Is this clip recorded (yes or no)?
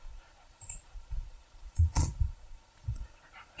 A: no